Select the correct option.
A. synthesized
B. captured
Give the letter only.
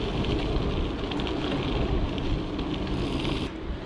B